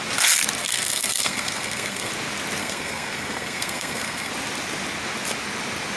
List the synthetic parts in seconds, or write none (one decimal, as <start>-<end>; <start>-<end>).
0.6-2.1; 2.6-4.3